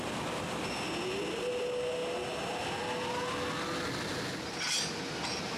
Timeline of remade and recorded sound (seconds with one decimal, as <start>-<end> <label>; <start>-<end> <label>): 0.0-5.6 recorded